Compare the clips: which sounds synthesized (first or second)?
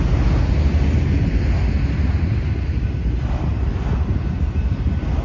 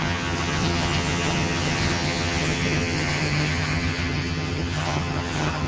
second